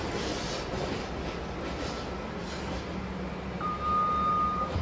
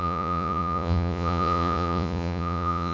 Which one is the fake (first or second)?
second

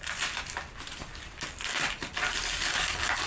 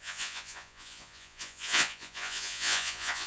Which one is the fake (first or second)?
second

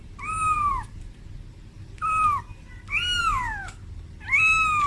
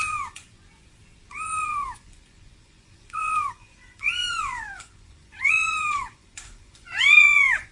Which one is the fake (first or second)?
second